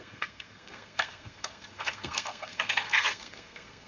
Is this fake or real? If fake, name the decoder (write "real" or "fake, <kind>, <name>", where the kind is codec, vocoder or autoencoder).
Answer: fake, codec, SNAC